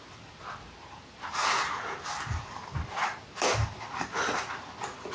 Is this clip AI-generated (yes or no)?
no